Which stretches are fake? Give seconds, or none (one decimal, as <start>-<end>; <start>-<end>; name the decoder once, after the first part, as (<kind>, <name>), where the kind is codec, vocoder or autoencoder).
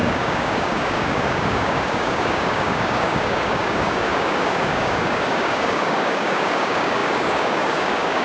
0.0-8.2 (codec, DAC)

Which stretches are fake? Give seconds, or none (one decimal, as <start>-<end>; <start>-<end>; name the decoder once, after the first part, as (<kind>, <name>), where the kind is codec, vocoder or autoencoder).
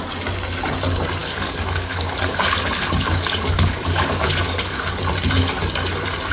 1.2-5.0 (codec, DAC)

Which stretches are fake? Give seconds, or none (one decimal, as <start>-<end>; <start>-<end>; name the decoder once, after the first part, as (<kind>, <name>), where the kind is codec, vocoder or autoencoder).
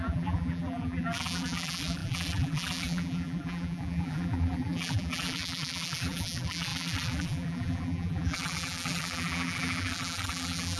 0.0-10.8 (vocoder, BigVGAN v2)